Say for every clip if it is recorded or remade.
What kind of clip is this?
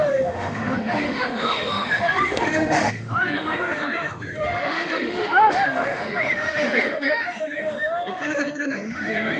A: remade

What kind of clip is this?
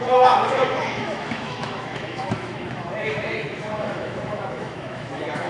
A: remade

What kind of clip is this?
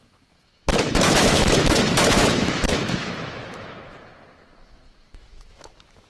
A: remade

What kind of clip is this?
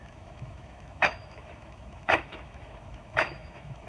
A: remade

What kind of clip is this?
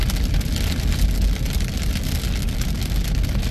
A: recorded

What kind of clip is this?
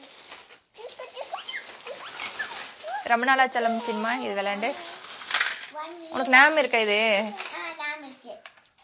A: recorded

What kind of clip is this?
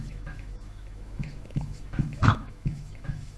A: remade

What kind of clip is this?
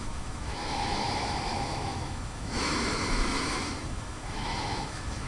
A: remade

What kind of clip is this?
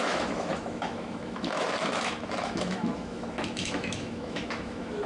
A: remade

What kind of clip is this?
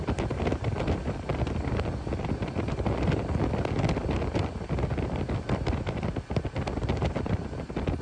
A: recorded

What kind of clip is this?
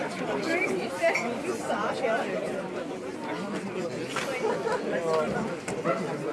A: recorded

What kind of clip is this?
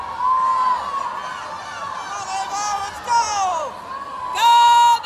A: recorded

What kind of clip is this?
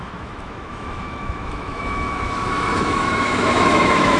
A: remade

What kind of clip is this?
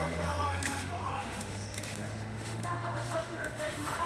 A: remade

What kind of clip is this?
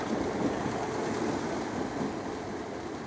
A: recorded